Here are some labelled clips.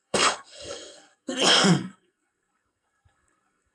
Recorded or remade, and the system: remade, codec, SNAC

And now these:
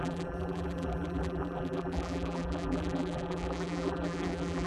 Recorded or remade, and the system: remade, vocoder, BigVGAN v2